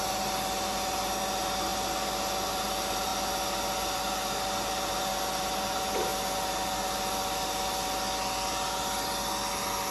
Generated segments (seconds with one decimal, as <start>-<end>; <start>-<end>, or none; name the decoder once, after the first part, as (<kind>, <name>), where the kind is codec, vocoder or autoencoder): none